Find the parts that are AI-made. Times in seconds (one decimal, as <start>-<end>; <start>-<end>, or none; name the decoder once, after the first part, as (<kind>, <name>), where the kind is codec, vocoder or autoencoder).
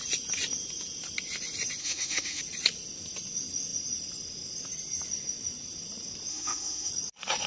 1.8-2.4 (autoencoder, DAC-VAE); 6.3-6.9